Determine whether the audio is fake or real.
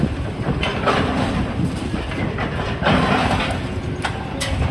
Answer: real